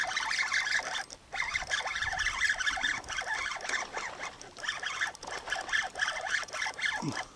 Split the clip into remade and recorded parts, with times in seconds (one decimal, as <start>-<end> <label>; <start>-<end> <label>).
0.0-7.4 recorded